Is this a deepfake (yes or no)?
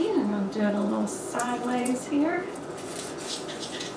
yes